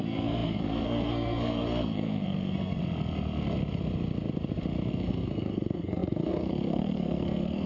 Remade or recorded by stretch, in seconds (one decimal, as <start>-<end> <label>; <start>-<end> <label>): 0.0-2.8 remade; 2.8-4.9 recorded; 4.9-7.7 remade